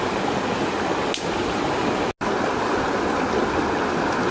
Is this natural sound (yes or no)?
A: yes